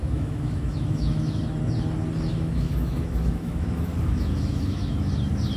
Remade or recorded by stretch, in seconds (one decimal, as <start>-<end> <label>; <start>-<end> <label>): 0.0-1.4 remade; 1.4-2.3 recorded; 2.3-5.1 remade; 5.1-5.6 recorded